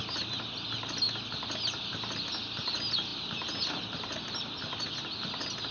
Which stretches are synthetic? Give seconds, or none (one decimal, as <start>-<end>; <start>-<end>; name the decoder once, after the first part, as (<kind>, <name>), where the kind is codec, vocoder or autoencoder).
none